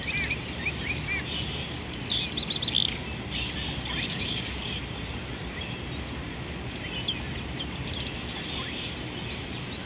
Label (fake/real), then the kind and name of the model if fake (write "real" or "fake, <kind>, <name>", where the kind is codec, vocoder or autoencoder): real